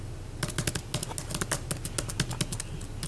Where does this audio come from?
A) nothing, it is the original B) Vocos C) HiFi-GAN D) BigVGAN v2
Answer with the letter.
A